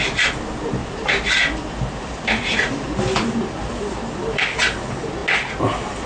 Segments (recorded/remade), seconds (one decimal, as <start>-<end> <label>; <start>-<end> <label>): 0.0-0.8 recorded; 0.8-4.4 remade; 4.4-6.1 recorded